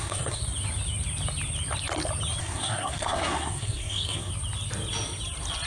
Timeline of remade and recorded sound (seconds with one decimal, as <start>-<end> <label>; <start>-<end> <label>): 0.0-0.4 remade; 0.4-2.4 recorded; 2.4-4.3 remade; 4.3-5.7 recorded